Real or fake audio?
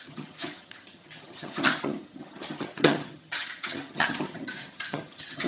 fake